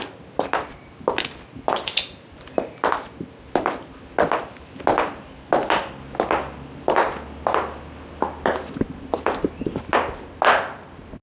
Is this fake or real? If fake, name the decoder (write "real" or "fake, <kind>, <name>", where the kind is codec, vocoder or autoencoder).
real